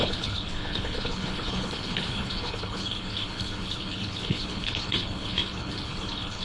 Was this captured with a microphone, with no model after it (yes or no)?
no